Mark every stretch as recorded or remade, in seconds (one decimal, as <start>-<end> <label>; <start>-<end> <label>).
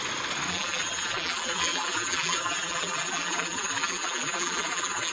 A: 0.0-0.5 recorded; 0.5-5.1 remade